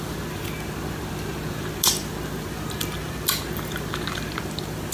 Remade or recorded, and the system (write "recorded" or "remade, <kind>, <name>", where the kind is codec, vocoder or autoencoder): recorded